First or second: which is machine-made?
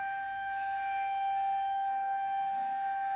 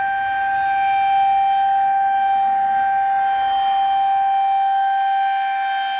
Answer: first